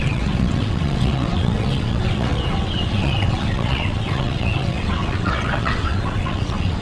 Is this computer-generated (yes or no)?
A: yes